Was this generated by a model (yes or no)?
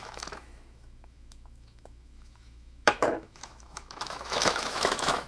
yes